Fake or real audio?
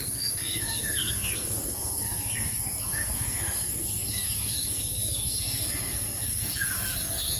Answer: fake